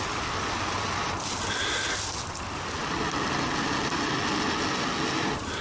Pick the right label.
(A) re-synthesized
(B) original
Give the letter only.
B